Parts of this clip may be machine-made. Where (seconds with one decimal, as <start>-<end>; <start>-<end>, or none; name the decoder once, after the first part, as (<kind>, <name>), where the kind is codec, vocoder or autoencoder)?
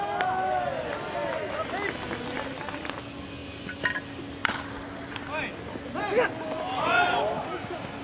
none